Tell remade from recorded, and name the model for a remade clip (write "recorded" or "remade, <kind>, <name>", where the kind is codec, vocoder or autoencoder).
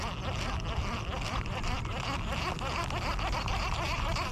recorded